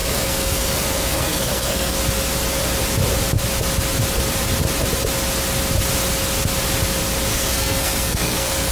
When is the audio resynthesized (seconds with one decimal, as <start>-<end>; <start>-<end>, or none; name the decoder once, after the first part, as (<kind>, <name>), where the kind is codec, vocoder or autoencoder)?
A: 0.0-2.0 (codec, SNAC); 7.3-8.7